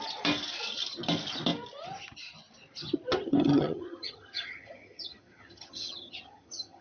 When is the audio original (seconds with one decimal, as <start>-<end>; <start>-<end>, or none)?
0.0-3.2